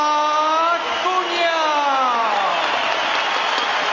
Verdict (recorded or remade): recorded